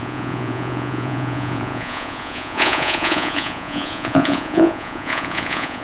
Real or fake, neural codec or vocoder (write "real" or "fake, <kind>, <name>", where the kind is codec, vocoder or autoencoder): fake, vocoder, Vocos